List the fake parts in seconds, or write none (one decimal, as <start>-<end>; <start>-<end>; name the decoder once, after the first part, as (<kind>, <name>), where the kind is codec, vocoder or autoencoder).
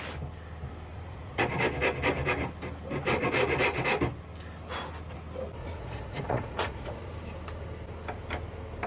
0.9-1.4 (vocoder, Vocos); 5.6-7.1